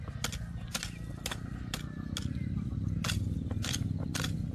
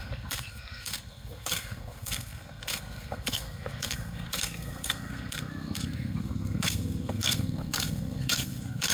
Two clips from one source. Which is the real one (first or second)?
first